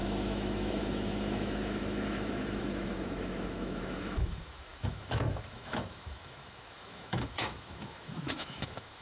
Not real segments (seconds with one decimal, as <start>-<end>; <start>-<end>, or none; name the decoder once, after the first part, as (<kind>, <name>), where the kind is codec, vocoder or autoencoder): 0.0-9.0 (autoencoder, DAC-VAE)